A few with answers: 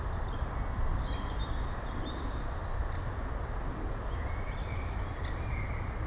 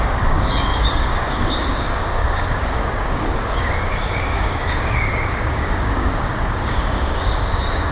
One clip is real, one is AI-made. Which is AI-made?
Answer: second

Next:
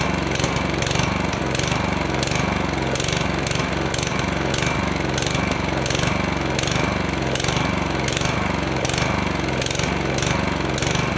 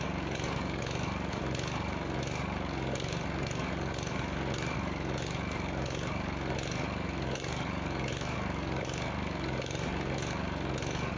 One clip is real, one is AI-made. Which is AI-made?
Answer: second